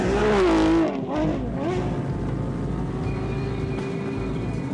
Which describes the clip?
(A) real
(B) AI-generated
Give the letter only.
A